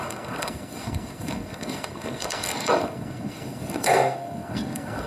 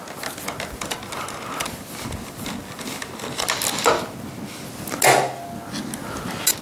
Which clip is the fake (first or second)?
first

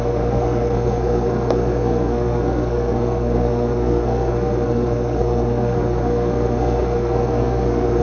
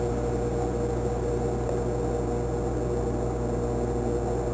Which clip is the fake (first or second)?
first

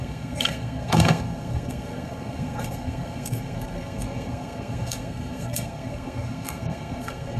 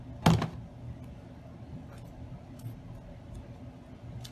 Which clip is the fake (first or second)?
first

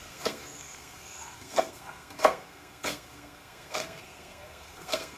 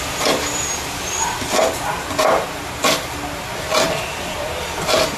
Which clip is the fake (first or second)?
first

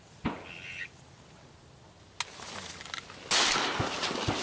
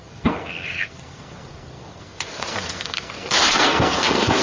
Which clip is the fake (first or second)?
second